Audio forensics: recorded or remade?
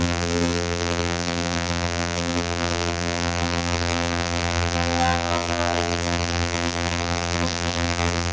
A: remade